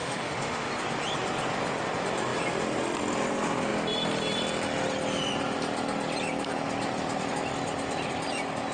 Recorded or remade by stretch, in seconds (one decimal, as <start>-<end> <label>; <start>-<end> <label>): 0.0-0.7 remade; 0.7-8.7 recorded